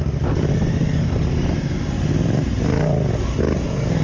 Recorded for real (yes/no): yes